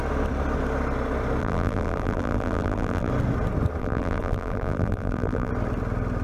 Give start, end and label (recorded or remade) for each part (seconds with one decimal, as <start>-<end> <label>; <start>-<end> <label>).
0.0-1.4 recorded; 1.4-3.1 remade; 3.1-3.8 recorded; 3.8-5.5 remade; 5.5-6.2 recorded